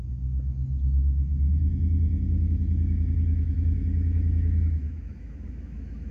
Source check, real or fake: fake